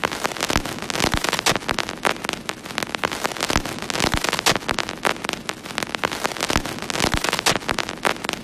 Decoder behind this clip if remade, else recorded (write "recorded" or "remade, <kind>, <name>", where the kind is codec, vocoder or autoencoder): recorded